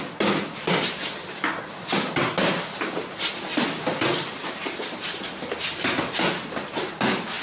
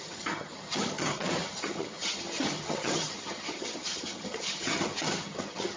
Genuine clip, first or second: first